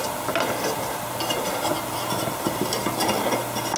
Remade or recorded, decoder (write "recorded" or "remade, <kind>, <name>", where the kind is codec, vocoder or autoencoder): recorded